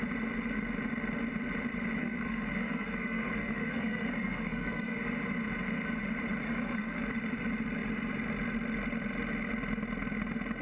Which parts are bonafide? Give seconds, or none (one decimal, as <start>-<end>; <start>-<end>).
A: 0.0-2.0; 5.0-6.4; 7.0-10.6